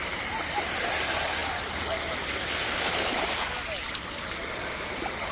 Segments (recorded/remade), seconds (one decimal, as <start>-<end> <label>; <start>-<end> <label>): 0.0-5.3 recorded